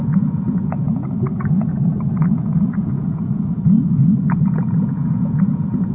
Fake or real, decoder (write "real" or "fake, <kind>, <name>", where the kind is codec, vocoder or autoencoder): fake, vocoder, Vocos